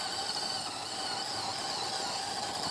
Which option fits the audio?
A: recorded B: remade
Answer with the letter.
A